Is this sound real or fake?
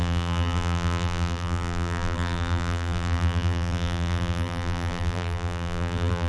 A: fake